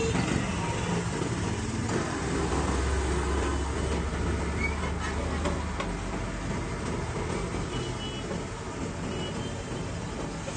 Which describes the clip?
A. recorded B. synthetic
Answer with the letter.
A